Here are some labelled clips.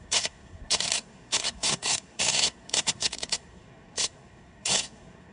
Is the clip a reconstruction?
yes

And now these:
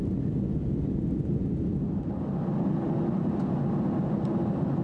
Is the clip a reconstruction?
no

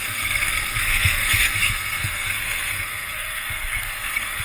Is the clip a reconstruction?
yes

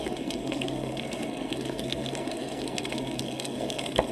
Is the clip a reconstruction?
yes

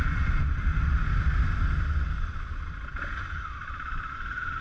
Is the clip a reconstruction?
no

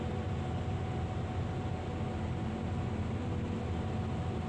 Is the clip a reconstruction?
no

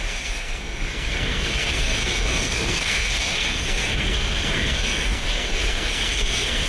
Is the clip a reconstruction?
yes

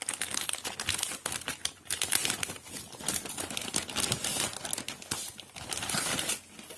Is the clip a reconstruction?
no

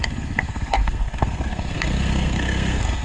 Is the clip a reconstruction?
yes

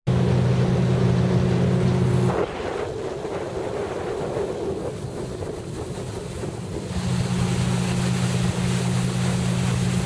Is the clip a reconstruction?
no